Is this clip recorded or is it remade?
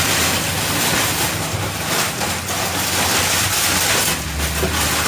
recorded